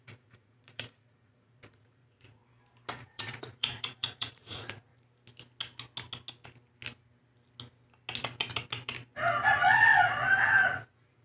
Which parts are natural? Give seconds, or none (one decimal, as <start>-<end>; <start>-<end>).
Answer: 2.4-3.0; 4.9-9.5